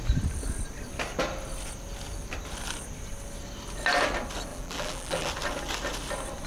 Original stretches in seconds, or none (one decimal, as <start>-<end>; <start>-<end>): 0.0-4.5; 5.3-6.5